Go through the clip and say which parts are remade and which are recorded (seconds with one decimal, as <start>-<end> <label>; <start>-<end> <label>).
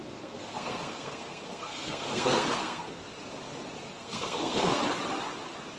0.0-3.0 remade; 3.0-3.9 recorded; 3.9-4.8 remade; 4.8-5.8 recorded